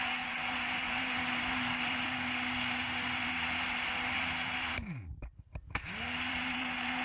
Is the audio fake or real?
fake